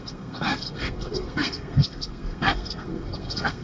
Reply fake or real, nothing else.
fake